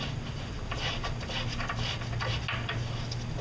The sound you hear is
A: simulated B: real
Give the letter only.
B